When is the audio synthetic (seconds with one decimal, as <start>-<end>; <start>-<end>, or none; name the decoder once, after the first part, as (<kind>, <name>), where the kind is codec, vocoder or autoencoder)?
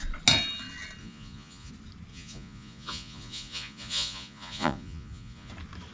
1.0-1.7 (vocoder, Vocos); 2.1-5.5